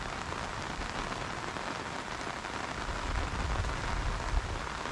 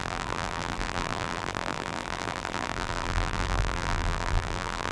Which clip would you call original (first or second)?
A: first